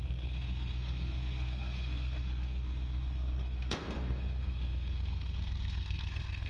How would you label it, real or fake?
fake